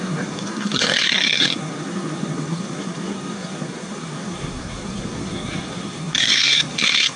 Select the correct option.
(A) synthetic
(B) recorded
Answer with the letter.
A